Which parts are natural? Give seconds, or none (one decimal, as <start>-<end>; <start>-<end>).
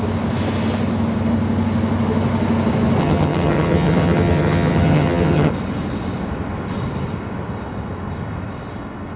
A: 0.0-3.0; 5.5-9.2